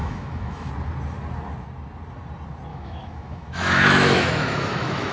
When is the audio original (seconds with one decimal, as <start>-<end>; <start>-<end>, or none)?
0.7-2.7